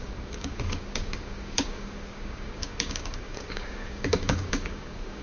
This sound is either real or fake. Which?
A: fake